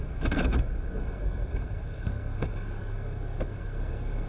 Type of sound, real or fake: fake